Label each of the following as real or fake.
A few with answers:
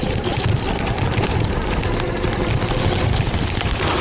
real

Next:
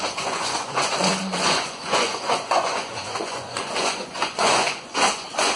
fake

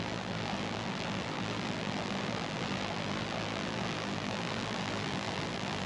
fake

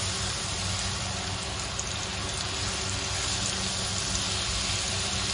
real